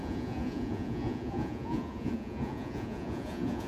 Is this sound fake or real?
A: fake